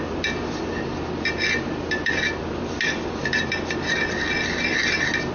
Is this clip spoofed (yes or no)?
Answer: no